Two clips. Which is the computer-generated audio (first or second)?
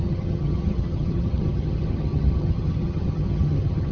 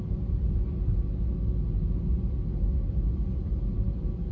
first